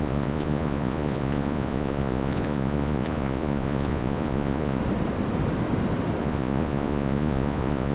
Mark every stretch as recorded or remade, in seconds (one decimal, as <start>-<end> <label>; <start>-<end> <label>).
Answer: 0.0-4.8 remade; 4.8-6.2 recorded; 6.2-7.9 remade